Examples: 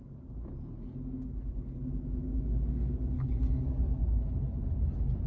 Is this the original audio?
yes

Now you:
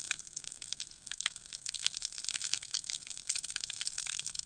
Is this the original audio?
no